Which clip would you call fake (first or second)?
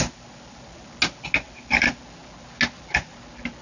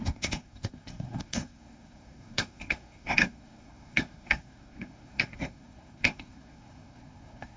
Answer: second